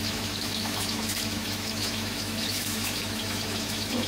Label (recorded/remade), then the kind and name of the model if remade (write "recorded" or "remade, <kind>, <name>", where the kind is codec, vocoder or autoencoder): remade, autoencoder, DAC-VAE